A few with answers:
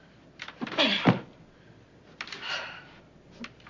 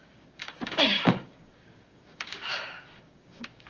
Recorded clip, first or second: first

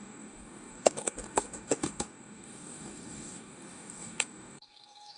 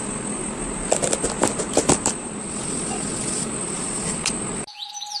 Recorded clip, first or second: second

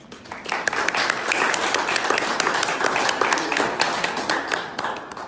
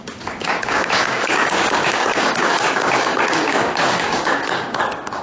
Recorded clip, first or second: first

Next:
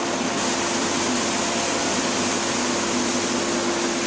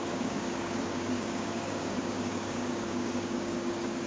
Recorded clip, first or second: first